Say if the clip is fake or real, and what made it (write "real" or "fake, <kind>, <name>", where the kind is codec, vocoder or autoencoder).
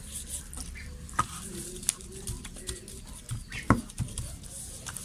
real